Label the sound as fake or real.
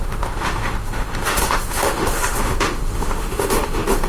fake